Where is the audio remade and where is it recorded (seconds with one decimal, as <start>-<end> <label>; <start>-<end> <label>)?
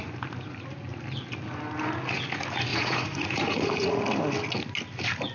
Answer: 0.0-2.7 recorded; 2.7-4.0 remade; 4.0-5.3 recorded